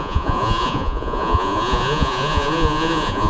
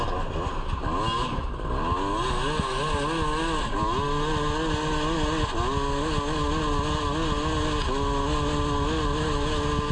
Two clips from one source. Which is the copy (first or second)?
first